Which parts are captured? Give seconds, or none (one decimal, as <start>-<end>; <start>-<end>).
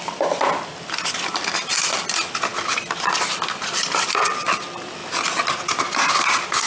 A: 5.0-6.2